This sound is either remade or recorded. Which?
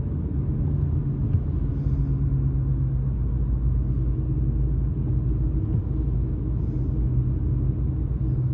recorded